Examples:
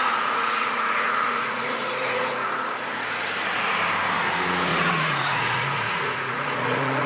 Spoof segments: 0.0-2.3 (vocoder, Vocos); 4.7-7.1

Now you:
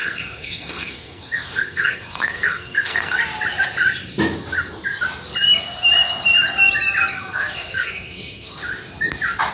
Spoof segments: 0.0-3.2 (codec, SNAC); 7.1-8.6

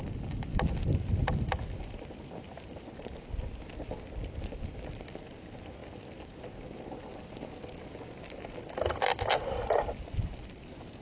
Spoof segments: none